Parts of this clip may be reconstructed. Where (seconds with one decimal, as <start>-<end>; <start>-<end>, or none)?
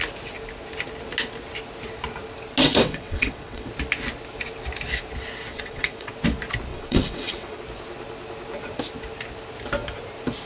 2.6-3.7; 5.5-6.1; 6.7-7.6